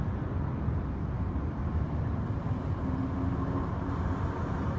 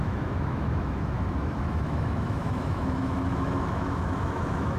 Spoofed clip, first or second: second